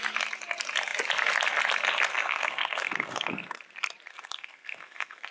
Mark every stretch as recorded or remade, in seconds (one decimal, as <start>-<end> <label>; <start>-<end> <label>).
0.0-2.1 recorded; 2.1-3.6 remade; 3.6-4.1 recorded; 4.1-5.3 remade